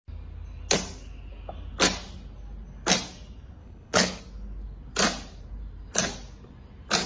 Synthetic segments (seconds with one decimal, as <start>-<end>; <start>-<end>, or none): 3.6-4.2